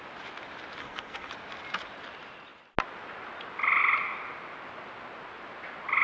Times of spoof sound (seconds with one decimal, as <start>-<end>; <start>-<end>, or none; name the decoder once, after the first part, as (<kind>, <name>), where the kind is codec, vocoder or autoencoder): 0.8-1.3 (codec, SNAC)